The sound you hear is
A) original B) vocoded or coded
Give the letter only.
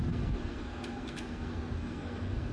B